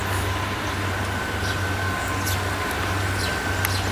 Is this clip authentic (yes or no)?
yes